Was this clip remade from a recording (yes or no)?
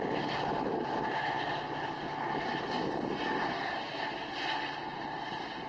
no